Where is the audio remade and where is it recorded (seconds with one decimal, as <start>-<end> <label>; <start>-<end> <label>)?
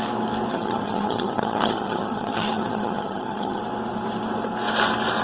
0.0-0.5 recorded; 0.5-3.6 remade; 3.6-5.2 recorded